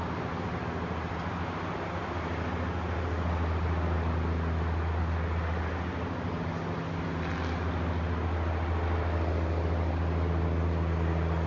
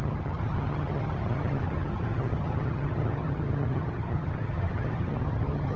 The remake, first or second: second